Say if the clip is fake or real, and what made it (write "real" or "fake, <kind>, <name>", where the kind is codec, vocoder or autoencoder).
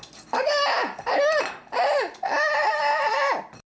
real